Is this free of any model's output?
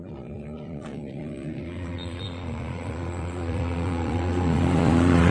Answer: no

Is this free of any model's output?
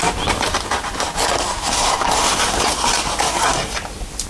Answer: yes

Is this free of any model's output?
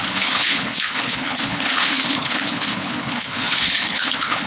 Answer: no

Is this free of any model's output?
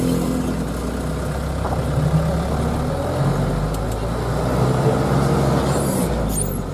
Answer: yes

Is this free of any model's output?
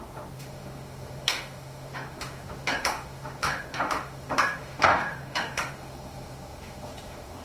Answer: no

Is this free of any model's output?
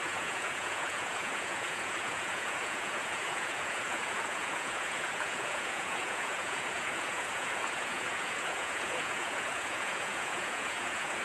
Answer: no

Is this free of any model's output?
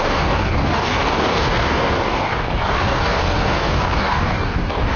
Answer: no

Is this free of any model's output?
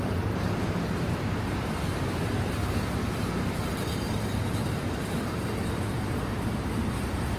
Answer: no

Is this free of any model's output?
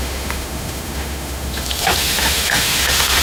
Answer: no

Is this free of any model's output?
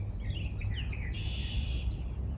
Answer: yes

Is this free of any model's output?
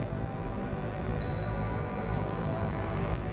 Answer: no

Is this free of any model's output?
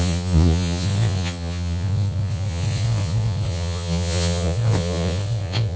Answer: no